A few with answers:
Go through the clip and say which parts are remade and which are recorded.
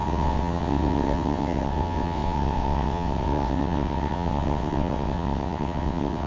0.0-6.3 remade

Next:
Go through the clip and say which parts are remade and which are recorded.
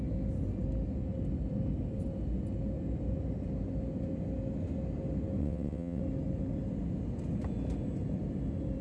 0.0-5.4 recorded; 5.4-6.0 remade; 6.0-8.8 recorded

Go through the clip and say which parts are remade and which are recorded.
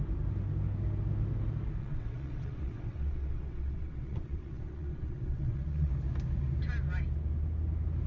0.0-1.8 recorded; 1.8-5.9 remade; 5.9-8.1 recorded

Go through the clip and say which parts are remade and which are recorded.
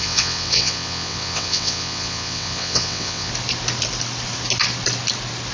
0.0-3.3 remade; 3.3-5.5 recorded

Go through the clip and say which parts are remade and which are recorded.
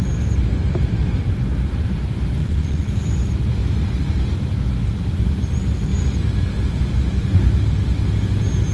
0.0-2.4 recorded; 2.4-2.9 remade; 2.9-8.7 recorded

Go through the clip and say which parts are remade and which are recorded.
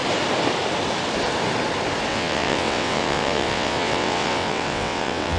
0.0-2.1 recorded; 2.1-5.4 remade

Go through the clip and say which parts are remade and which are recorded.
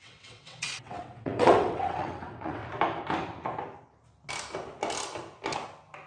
0.0-2.6 remade; 2.6-6.1 recorded